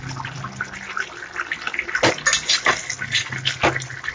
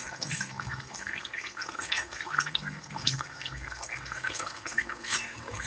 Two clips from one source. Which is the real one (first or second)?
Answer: first